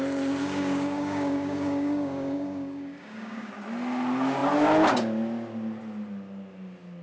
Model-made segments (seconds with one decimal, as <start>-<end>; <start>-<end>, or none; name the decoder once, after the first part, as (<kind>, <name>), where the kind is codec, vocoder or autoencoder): 0.4-3.5 (codec, DAC)